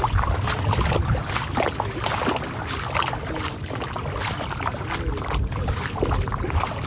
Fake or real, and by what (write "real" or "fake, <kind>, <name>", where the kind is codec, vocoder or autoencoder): real